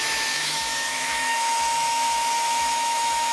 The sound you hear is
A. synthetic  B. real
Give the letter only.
A